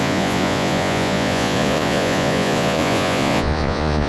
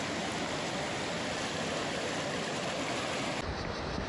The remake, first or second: first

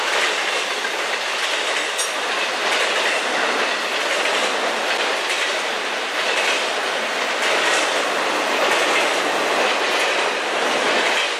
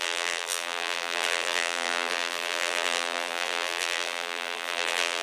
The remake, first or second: second